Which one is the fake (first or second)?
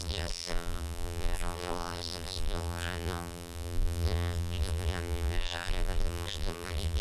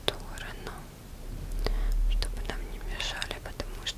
first